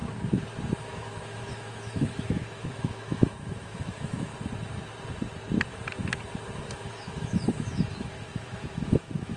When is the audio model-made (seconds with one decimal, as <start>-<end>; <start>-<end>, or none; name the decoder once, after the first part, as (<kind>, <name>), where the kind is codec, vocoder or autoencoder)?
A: 0.8-4.3 (autoencoder, DAC-VAE); 6.6-9.4